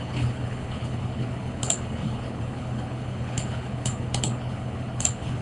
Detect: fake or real fake